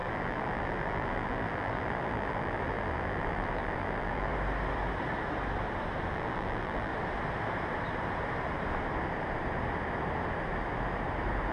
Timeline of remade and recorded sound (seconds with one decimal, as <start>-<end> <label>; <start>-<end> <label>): 0.0-4.3 remade; 4.3-6.1 recorded; 6.1-6.9 remade; 6.9-11.5 recorded